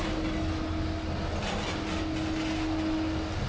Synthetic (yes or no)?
no